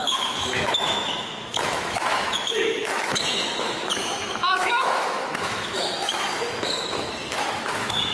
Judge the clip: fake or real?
fake